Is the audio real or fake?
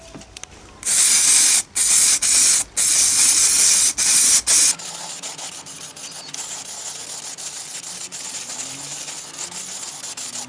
real